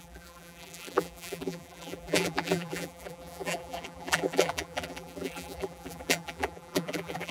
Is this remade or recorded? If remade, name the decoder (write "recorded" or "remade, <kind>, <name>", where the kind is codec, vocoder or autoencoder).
remade, vocoder, BigVGAN v2